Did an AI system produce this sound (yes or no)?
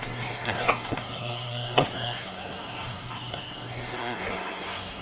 yes